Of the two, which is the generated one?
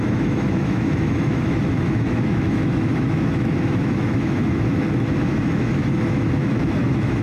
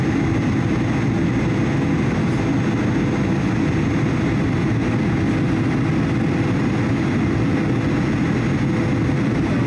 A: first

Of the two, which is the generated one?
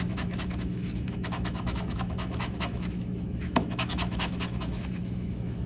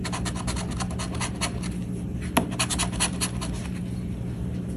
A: first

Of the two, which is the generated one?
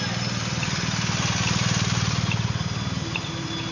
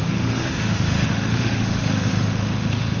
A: second